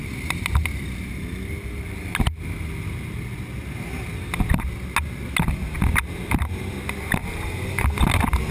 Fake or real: real